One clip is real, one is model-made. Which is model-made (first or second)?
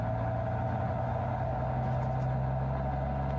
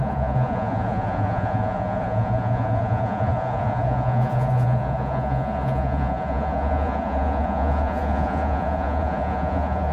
second